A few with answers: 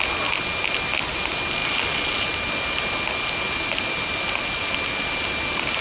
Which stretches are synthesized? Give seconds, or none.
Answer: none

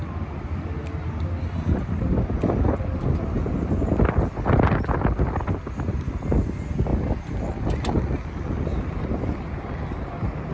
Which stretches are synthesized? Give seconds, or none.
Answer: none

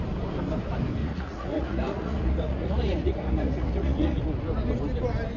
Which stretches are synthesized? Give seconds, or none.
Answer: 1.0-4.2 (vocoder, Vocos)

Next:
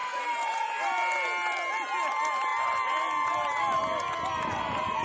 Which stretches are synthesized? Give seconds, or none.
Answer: none

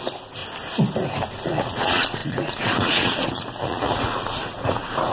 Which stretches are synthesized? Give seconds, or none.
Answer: 0.0-0.4 (vocoder, Vocos); 1.3-5.1